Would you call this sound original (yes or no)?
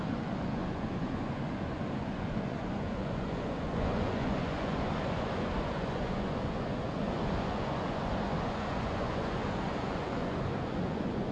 no